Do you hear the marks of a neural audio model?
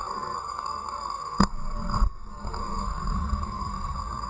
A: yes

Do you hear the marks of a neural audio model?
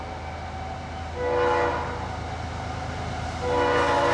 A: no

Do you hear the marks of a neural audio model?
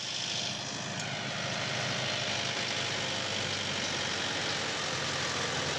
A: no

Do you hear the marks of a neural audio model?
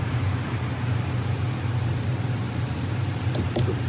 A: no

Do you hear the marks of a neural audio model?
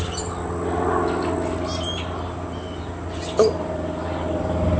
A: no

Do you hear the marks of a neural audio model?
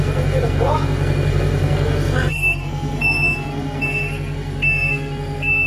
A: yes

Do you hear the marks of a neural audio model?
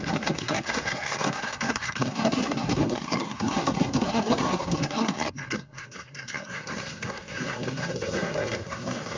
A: yes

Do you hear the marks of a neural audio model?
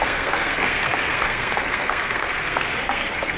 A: yes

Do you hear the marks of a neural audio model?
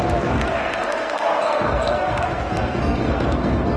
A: yes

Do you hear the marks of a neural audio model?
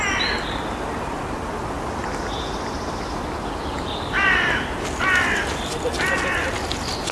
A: no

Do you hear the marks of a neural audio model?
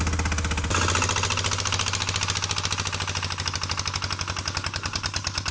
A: no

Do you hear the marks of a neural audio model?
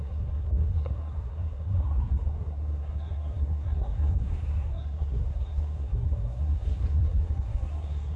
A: yes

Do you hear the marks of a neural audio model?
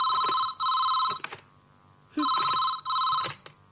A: no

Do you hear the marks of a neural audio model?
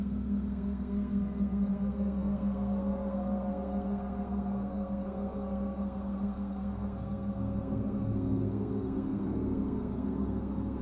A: yes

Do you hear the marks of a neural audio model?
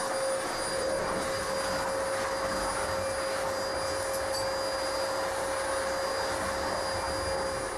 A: no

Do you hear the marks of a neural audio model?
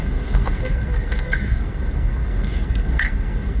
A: yes